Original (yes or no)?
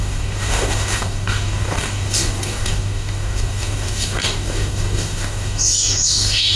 no